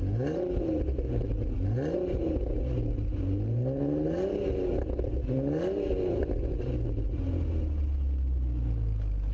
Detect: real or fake real